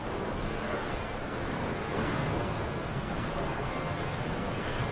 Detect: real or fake fake